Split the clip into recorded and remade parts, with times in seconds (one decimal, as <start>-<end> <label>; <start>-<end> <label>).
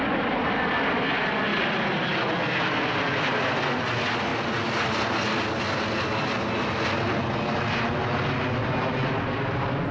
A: 0.0-9.9 recorded